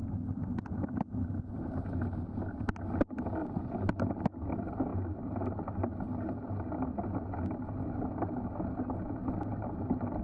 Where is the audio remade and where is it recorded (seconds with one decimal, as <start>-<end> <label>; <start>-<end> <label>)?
0.0-3.4 recorded; 3.4-4.0 remade; 4.0-9.5 recorded; 9.5-10.2 remade